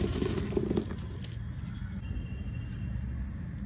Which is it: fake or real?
real